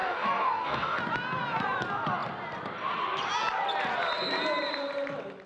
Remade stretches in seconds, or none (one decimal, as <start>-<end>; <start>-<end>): 0.0-1.0